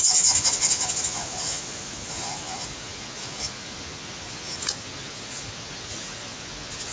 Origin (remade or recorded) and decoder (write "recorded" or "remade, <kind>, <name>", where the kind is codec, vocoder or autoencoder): remade, vocoder, Vocos